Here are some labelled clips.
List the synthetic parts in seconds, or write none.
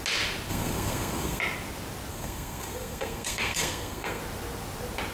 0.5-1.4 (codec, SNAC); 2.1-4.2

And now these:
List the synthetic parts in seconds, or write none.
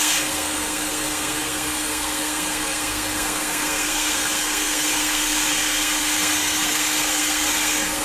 0.0-8.0 (codec, SNAC)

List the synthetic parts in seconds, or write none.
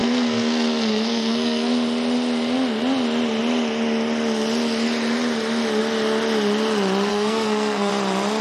0.0-1.7 (codec, SNAC); 7.1-7.9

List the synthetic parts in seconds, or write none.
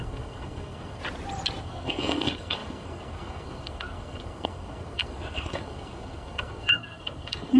0.0-1.0 (codec, SNAC); 1.6-7.6